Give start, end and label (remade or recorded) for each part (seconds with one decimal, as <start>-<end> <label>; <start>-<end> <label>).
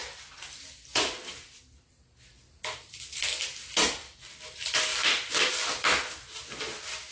0.0-7.1 recorded